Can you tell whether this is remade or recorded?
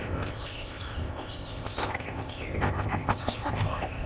remade